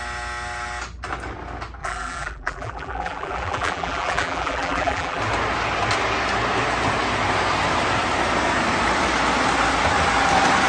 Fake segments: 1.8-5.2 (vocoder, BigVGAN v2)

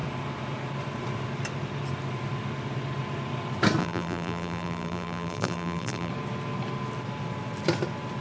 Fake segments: 3.8-6.1 (vocoder, BigVGAN v2)

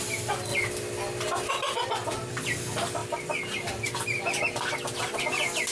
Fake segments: 3.0-5.2 (vocoder, BigVGAN v2)

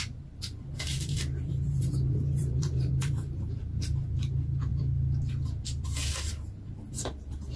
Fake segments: 0.9-3.6 (vocoder, BigVGAN v2)

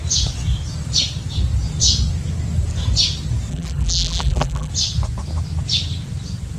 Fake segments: 3.5-4.7 (vocoder, BigVGAN v2)